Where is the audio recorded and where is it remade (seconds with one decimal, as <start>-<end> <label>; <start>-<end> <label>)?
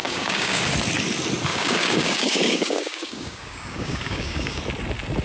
0.0-0.7 remade; 0.7-1.5 recorded; 1.5-4.6 remade; 4.6-5.2 recorded